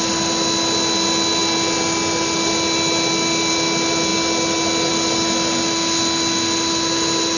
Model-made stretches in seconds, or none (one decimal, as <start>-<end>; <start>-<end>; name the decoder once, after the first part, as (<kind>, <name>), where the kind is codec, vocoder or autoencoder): none

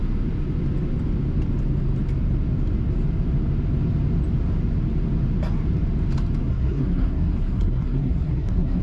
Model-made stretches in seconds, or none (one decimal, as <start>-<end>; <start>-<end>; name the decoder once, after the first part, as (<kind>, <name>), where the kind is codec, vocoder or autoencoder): 6.4-8.8 (codec, SNAC)

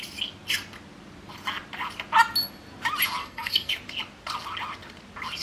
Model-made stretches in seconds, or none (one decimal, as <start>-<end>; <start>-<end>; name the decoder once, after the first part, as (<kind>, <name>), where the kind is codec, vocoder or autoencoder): 3.2-3.7 (codec, SNAC)

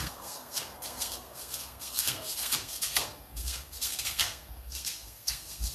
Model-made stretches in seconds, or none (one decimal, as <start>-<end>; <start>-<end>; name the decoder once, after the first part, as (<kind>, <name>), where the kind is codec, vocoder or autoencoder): 0.0-5.7 (codec, SNAC)